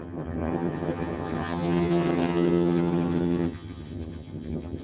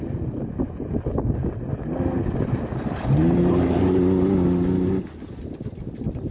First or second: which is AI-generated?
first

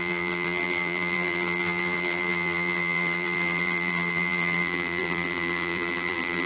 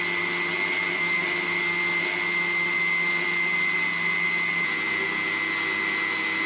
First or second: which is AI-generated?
first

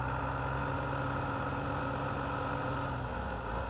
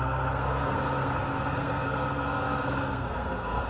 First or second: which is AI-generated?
second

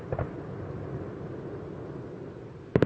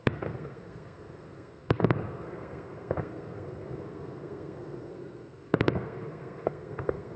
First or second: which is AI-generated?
second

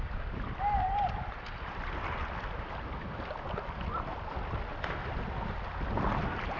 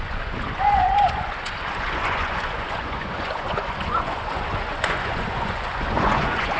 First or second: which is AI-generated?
second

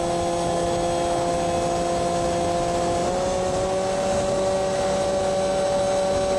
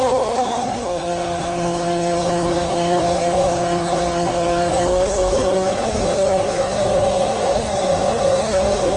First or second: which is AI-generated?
second